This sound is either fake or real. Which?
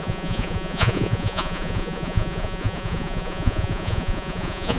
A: fake